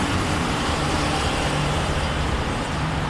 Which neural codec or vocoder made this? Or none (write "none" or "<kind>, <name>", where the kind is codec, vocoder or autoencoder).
vocoder, BigVGAN v2